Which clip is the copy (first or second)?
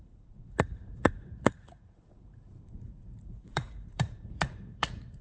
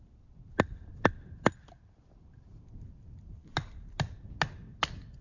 first